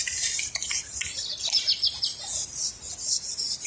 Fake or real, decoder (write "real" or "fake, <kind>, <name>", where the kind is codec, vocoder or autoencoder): real